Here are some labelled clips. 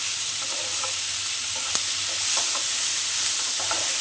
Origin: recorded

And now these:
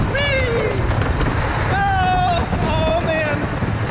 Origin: recorded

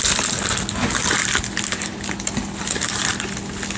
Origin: recorded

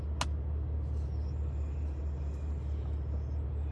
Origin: recorded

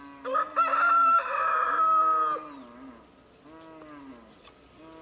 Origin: recorded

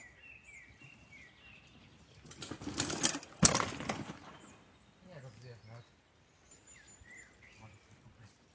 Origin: recorded